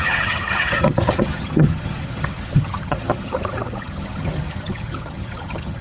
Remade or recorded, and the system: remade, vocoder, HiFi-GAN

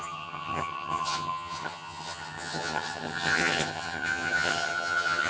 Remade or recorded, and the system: remade, vocoder, HiFi-GAN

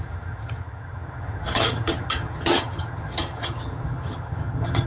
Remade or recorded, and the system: remade, vocoder, HiFi-GAN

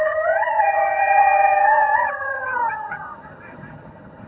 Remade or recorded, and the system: remade, vocoder, HiFi-GAN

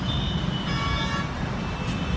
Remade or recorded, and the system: recorded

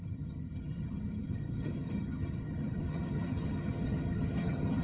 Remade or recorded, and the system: remade, vocoder, HiFi-GAN